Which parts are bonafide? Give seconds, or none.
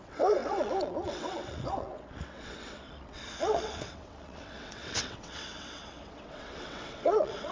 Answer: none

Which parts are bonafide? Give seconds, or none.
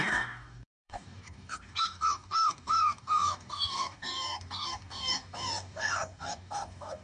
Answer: none